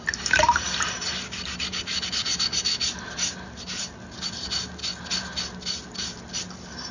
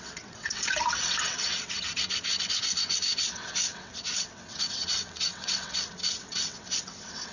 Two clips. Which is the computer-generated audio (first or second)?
second